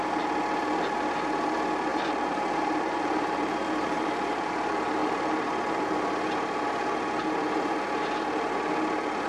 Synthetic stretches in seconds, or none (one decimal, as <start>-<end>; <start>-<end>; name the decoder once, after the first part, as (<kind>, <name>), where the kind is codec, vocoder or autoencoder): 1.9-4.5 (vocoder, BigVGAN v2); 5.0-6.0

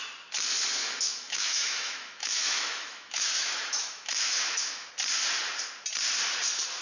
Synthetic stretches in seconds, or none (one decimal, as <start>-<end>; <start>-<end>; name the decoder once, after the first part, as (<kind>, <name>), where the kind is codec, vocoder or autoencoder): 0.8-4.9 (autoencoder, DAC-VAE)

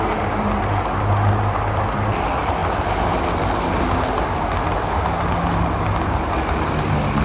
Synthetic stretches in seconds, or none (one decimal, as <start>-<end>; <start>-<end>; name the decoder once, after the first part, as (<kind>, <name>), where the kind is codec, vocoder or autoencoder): none